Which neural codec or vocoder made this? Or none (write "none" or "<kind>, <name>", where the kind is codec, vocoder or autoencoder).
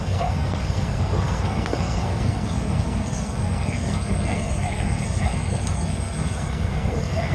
codec, SNAC